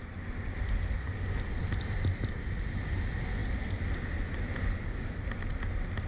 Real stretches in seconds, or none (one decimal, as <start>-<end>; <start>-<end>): 0.0-6.1